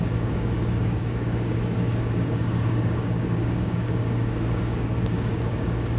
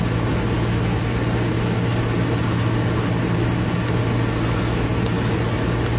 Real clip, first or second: second